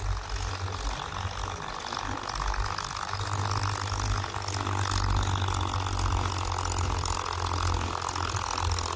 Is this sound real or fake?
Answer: real